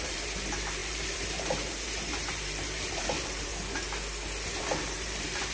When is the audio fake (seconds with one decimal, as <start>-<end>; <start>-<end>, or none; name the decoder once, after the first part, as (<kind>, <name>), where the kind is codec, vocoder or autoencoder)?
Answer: 0.0-3.5 (vocoder, BigVGAN v2); 4.6-5.5